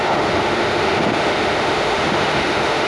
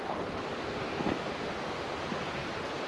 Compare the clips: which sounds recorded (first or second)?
second